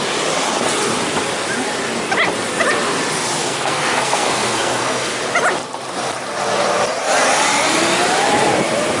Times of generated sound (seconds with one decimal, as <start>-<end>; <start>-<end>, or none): 3.4-5.2